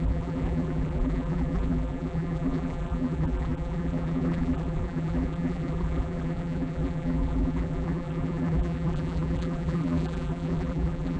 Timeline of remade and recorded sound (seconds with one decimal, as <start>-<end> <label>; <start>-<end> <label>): 0.0-11.2 remade